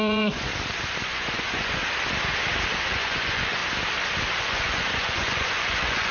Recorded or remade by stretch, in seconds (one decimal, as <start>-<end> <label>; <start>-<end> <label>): 0.0-0.5 remade; 0.5-1.0 recorded; 1.0-1.8 remade; 1.8-2.9 recorded; 2.9-3.6 remade; 3.6-4.4 recorded; 4.4-6.1 remade